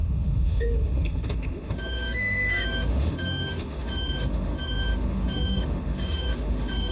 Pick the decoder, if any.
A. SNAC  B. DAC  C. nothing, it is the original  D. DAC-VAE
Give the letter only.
D